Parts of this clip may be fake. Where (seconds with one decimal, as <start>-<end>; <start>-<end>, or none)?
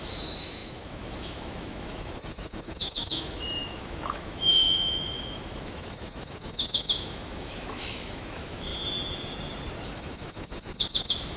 0.0-8.7; 9.9-11.4